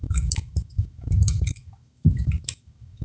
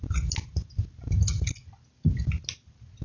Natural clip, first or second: second